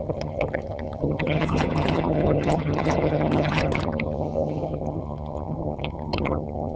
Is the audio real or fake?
fake